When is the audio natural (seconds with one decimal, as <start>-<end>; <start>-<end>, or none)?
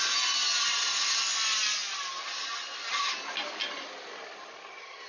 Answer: 0.0-5.1